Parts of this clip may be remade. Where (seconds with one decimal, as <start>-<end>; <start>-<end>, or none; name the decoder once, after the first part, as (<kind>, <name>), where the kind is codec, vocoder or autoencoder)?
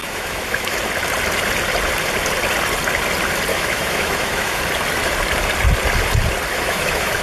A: 0.0-0.8 (autoencoder, DAC-VAE); 3.5-4.6; 6.5-7.2